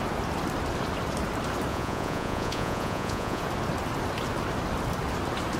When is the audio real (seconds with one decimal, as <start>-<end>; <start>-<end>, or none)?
0.0-1.7; 3.4-5.6